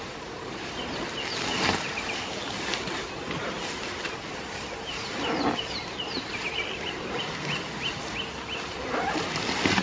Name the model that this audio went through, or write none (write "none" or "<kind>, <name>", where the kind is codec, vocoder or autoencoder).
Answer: none